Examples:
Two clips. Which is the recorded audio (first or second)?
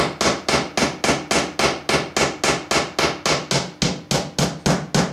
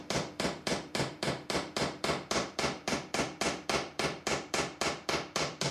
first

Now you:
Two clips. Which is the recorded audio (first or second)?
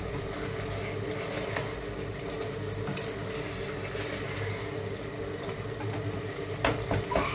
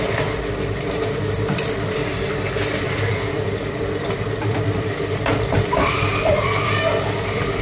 first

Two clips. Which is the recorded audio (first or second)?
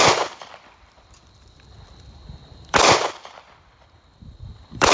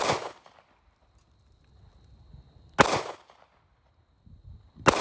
second